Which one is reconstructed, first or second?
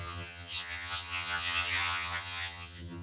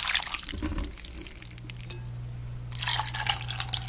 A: first